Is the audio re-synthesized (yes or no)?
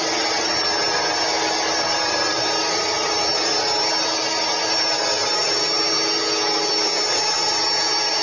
no